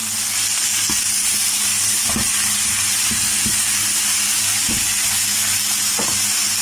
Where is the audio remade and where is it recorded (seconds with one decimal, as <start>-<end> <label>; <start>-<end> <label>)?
0.0-6.6 recorded